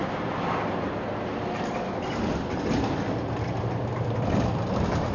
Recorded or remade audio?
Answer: recorded